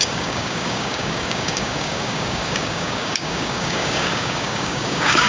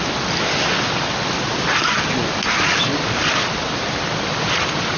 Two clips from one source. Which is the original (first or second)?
second